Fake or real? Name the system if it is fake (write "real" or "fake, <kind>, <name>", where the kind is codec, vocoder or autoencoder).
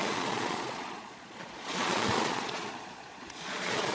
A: fake, vocoder, Vocos